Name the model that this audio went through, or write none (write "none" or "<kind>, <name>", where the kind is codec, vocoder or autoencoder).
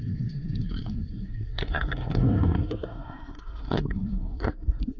codec, SNAC